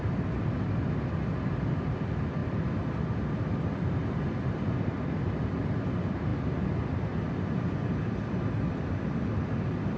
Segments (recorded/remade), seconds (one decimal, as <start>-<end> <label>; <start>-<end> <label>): 0.0-6.3 remade; 6.3-9.4 recorded; 9.4-10.0 remade